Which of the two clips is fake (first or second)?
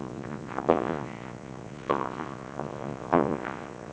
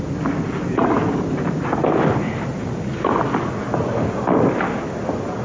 first